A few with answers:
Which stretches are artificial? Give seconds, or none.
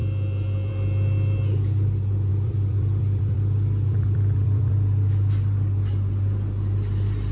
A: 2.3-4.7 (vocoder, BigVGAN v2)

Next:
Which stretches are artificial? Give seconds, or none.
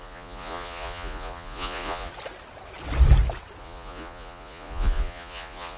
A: 0.0-2.1 (vocoder, Vocos); 3.6-5.8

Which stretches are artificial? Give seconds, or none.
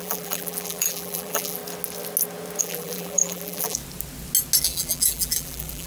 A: 0.0-1.6 (vocoder, BigVGAN v2); 2.6-3.8; 4.6-5.9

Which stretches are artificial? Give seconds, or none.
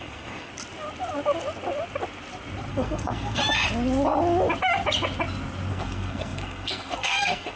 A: 0.0-0.5 (codec, SNAC); 2.7-3.4; 5.7-7.6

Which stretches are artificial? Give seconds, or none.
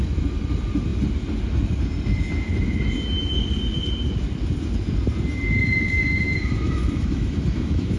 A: 5.6-8.0 (autoencoder, DAC-VAE)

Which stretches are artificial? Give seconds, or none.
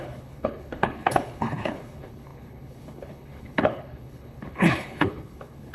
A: 0.0-5.7 (codec, HILCodec)